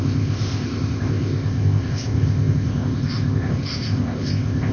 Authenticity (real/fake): fake